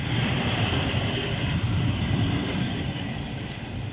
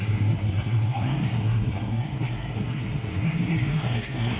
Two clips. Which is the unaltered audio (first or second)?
first